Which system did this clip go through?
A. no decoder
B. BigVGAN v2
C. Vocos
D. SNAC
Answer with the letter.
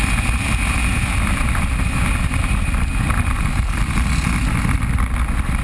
A